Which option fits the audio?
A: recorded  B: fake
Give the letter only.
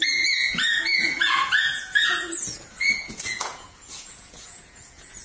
B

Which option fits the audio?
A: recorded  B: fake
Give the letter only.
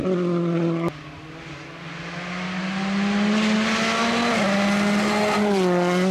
A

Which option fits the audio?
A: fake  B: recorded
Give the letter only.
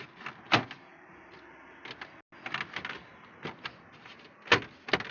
B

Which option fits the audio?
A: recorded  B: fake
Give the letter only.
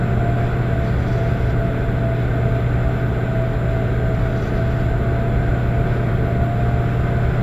A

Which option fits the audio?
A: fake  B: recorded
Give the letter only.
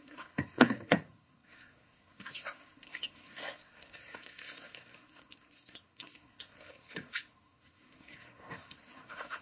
A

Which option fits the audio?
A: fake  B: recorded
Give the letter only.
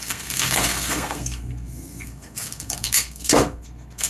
A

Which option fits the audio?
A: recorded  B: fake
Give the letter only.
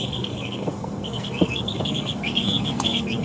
B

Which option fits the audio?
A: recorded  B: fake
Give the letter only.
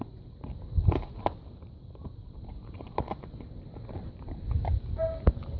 A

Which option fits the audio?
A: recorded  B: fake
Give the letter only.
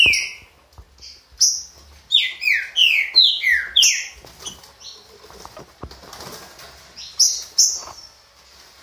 A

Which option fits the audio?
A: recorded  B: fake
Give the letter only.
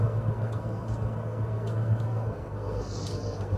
B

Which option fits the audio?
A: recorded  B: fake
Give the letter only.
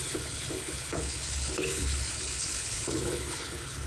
B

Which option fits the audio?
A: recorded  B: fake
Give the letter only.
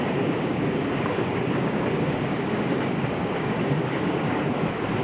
B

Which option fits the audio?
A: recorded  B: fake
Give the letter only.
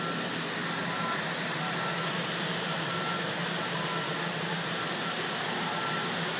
A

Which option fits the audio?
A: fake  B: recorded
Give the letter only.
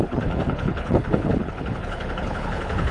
A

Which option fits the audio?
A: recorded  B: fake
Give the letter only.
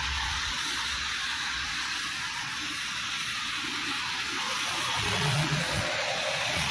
B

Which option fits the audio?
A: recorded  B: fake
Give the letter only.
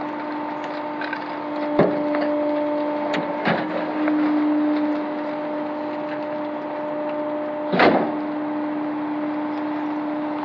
A